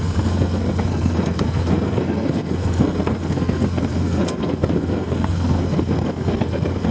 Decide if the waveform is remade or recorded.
remade